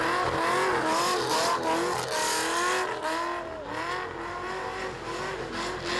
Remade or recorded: recorded